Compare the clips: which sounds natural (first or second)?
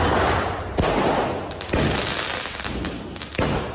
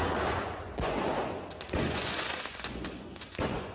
first